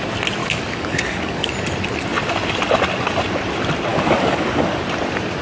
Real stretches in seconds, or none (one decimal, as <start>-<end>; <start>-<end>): 0.0-0.4; 1.5-3.9; 4.8-5.4